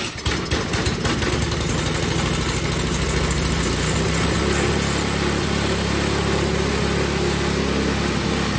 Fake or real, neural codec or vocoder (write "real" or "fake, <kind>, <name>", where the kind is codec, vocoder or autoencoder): real